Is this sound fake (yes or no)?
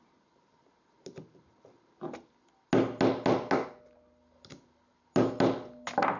no